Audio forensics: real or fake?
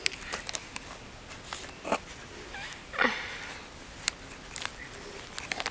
real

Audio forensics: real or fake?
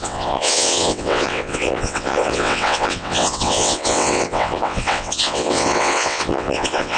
fake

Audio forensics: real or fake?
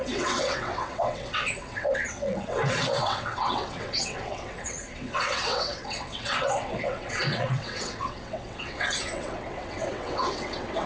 fake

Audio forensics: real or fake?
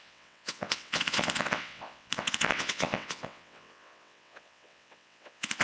fake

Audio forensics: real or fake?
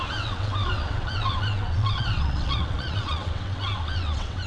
fake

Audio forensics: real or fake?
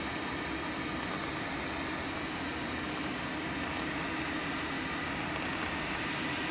real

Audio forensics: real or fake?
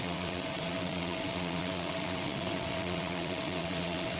fake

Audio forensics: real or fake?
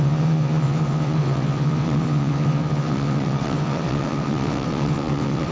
fake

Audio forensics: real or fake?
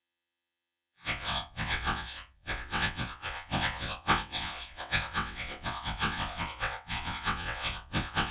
fake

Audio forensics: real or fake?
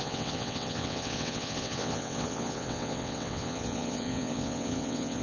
fake